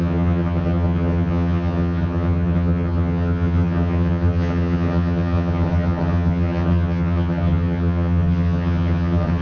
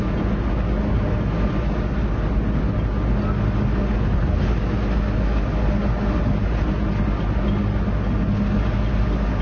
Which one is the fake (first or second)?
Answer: first